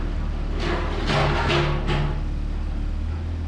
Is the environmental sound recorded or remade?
recorded